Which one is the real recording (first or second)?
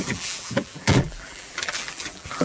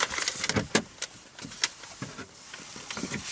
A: second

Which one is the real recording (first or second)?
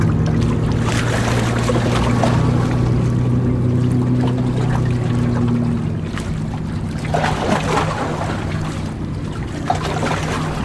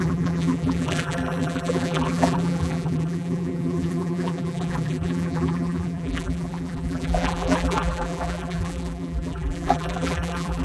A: first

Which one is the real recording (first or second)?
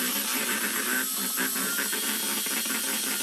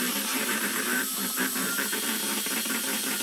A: first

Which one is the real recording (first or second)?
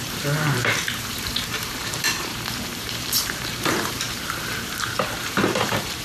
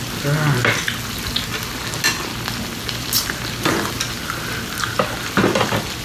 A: second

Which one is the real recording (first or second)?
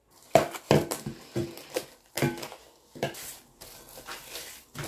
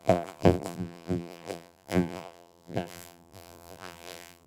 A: first